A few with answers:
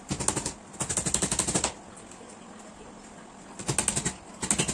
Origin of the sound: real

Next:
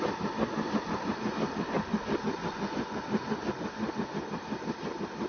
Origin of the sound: real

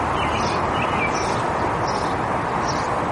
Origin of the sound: real